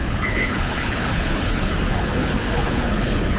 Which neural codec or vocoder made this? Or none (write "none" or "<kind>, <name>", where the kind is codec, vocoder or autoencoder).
codec, HILCodec